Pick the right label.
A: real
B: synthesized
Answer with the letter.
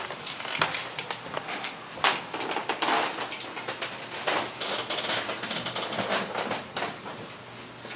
A